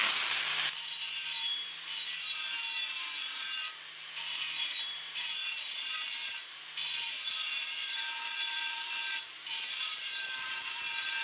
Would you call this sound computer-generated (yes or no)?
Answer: yes